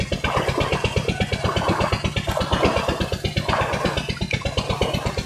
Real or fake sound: real